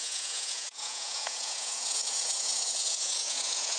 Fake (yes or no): yes